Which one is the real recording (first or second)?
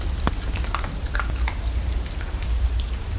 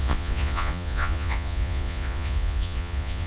first